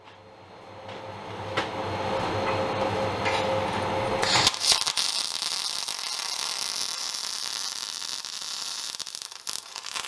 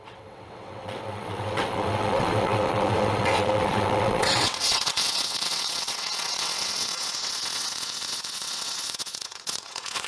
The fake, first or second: second